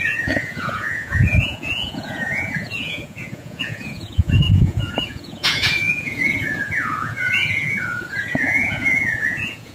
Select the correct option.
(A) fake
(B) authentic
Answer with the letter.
A